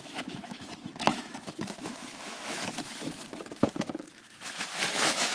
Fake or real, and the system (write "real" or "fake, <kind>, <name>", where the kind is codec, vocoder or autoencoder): fake, autoencoder, DAC-VAE